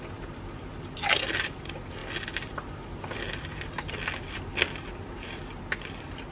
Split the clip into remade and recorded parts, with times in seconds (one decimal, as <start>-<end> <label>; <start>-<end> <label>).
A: 0.0-6.3 recorded